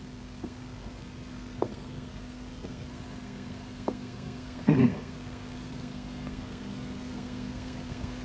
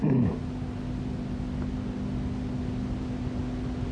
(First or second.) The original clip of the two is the second